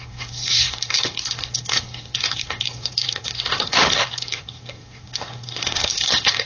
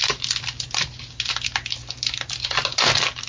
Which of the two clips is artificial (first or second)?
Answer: first